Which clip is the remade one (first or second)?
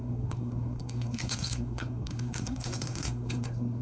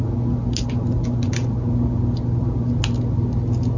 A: first